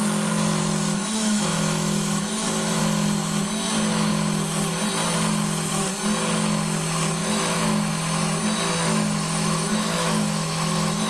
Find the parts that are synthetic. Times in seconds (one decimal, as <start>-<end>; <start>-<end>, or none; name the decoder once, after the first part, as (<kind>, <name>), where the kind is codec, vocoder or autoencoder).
1.0-2.8 (autoencoder, DAC-VAE); 7.2-7.9; 8.8-11.1